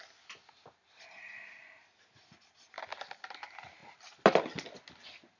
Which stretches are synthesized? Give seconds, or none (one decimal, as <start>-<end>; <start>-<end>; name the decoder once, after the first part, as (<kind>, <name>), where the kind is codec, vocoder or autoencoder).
none